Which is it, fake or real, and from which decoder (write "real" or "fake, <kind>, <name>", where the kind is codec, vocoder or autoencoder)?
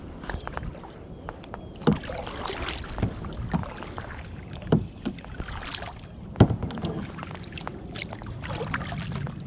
real